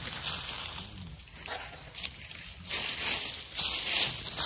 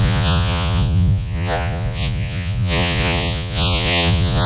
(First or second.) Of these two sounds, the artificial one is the second